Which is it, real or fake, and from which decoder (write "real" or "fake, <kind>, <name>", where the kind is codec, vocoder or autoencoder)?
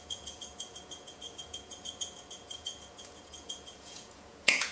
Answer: fake, vocoder, Vocos